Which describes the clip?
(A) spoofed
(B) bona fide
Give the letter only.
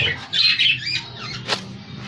B